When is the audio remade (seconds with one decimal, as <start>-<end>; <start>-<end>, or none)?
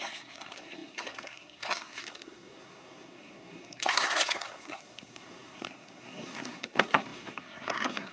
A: 0.0-8.1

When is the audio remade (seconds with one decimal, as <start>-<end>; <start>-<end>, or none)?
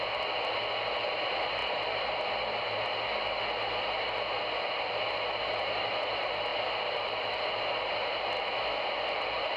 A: none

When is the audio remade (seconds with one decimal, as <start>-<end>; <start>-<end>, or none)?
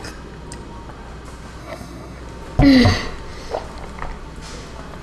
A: 1.6-2.2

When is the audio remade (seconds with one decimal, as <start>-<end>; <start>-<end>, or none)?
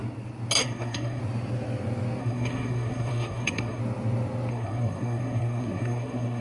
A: 0.6-1.2; 2.2-3.8; 4.5-6.4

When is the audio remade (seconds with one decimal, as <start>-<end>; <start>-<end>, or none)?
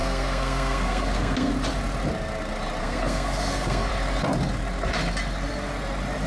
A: 0.0-1.5; 2.8-3.9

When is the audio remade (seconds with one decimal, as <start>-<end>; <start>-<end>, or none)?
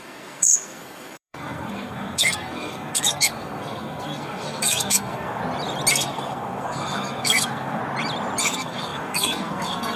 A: 0.0-5.4; 5.9-7.8; 8.4-10.0